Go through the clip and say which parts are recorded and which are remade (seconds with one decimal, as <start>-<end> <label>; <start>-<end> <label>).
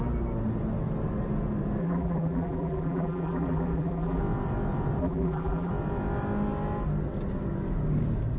0.0-1.8 recorded; 1.8-4.2 remade; 4.2-5.0 recorded; 5.0-5.7 remade; 5.7-8.4 recorded